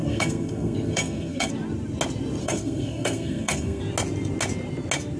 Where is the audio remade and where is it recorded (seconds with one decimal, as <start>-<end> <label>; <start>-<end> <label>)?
0.0-1.5 remade; 1.5-2.4 recorded; 2.4-3.8 remade; 3.8-5.2 recorded